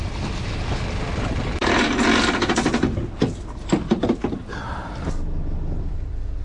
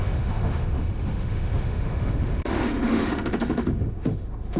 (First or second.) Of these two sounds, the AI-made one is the second